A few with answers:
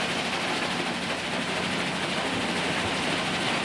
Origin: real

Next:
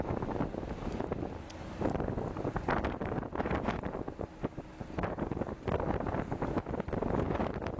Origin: real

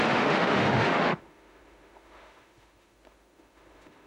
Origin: fake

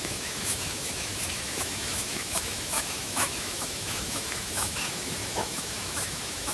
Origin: fake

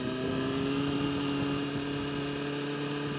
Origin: real